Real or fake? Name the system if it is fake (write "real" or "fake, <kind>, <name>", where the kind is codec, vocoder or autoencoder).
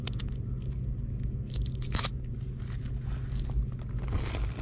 real